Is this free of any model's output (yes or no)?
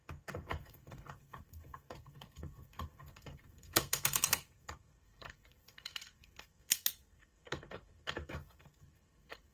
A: no